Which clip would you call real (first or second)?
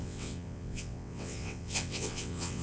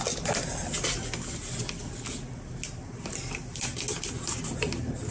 second